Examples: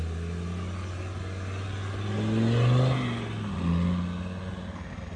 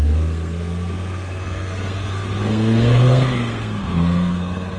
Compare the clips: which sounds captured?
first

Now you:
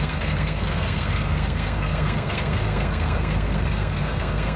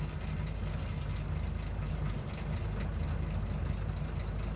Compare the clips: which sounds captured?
second